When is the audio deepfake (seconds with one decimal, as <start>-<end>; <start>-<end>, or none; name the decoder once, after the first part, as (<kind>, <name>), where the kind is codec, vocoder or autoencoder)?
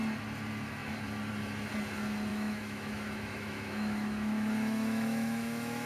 2.3-5.9 (autoencoder, DAC-VAE)